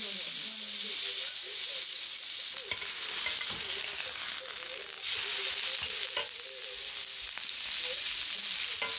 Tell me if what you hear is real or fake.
real